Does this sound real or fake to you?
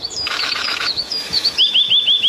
fake